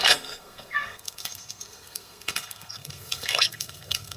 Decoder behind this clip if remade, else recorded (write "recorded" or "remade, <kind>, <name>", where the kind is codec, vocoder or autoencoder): remade, codec, SNAC